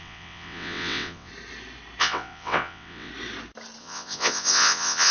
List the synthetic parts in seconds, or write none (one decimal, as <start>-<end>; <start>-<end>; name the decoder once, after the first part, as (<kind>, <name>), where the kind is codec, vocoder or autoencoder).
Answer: 0.0-1.3 (vocoder, WaveNeXt); 2.0-3.1; 3.8-5.1

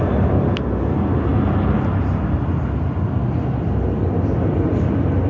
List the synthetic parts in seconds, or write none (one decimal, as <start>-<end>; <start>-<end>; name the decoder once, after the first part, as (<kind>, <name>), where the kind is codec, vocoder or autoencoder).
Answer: none

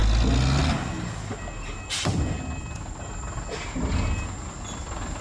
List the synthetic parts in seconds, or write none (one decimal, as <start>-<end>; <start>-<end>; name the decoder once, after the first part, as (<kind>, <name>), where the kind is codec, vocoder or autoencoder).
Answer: none

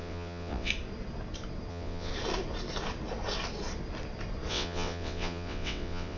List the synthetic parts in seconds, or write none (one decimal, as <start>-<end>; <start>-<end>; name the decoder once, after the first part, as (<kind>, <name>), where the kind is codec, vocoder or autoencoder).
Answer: 0.0-0.7 (vocoder, WaveNeXt); 1.7-2.1; 4.5-6.2

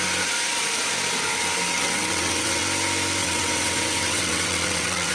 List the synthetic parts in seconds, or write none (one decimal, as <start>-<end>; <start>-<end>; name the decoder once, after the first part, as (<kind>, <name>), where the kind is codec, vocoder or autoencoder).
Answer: 1.7-2.6 (vocoder, WaveNeXt); 3.2-5.1

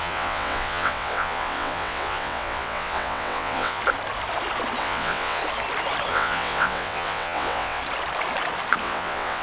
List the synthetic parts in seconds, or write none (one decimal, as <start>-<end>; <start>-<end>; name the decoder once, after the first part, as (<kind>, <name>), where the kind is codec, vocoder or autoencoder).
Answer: 0.0-3.8 (vocoder, WaveNeXt); 4.8-5.4; 6.1-7.8; 8.8-9.4

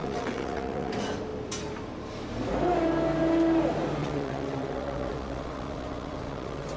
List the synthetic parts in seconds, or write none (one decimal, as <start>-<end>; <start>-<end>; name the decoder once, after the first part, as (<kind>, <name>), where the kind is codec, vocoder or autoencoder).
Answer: 0.0-0.9 (vocoder, WaveNeXt); 4.0-6.8